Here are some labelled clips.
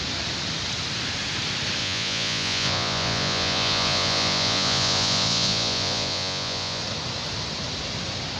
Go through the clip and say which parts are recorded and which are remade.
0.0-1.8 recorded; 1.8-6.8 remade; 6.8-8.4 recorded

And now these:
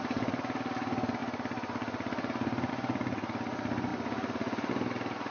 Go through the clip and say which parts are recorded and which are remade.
0.0-5.3 recorded

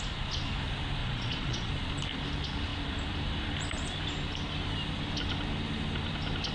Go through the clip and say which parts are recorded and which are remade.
0.0-1.0 recorded; 1.0-1.7 remade; 1.7-6.5 recorded

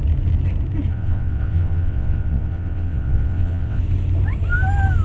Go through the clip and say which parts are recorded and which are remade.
0.0-0.9 recorded; 0.9-3.8 remade; 3.8-5.0 recorded